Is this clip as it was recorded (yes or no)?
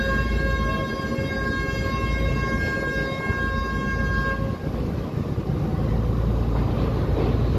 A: yes